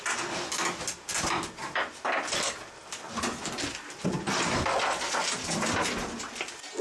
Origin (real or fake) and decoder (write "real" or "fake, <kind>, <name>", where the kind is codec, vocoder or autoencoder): real